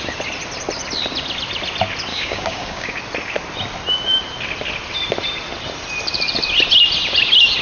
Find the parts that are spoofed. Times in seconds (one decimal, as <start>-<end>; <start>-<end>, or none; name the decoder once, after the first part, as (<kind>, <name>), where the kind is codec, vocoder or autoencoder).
2.1-3.0 (codec, DAC)